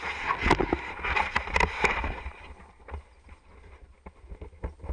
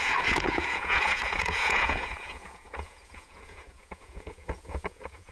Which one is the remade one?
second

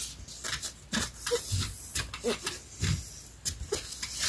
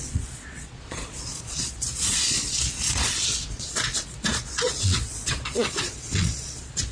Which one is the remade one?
second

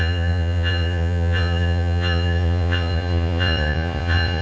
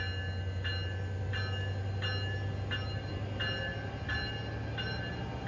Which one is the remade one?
first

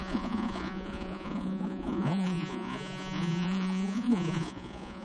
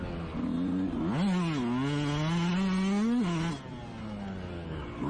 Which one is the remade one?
first